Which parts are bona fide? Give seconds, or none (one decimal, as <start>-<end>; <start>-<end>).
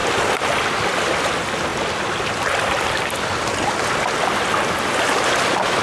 0.0-5.8